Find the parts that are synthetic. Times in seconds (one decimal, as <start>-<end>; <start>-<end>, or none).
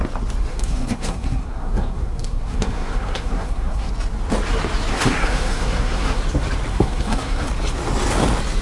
0.5-3.9; 4.9-6.2; 6.7-7.5